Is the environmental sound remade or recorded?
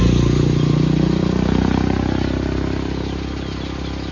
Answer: recorded